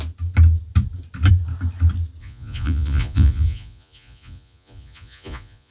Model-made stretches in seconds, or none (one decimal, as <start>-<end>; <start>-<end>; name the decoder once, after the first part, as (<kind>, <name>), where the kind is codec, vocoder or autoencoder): 2.2-5.7 (vocoder, Vocos)